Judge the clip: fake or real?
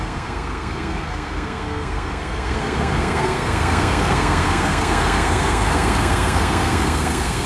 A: fake